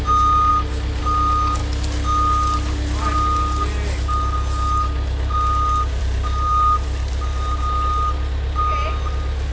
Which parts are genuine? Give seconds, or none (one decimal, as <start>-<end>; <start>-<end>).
0.0-9.5